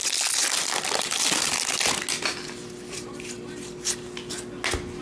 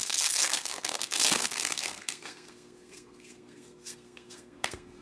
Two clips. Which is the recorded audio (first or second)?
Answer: first